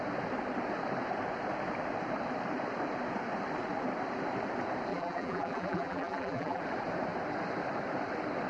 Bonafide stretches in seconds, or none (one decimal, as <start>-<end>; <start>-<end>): 0.0-4.9; 6.6-8.5